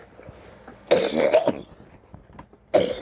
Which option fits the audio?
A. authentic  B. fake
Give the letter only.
A